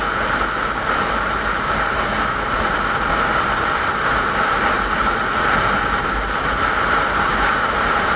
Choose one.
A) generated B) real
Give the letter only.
B